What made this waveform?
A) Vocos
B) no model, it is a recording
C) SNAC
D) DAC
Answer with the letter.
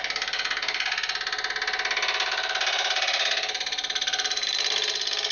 B